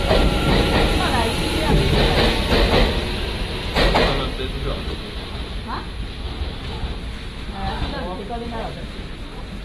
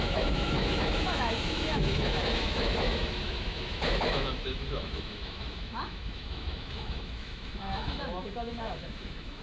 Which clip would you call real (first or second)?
first